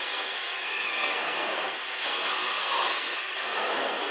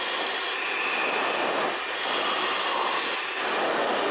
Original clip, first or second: second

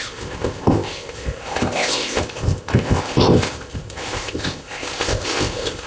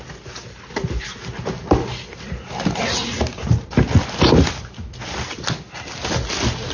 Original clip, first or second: second